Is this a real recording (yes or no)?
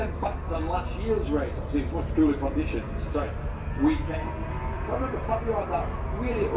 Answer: yes